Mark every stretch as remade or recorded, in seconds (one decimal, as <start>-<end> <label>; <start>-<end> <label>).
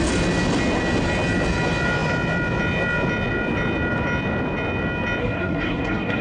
0.0-5.2 recorded; 5.2-6.2 remade